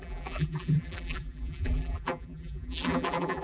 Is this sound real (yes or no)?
no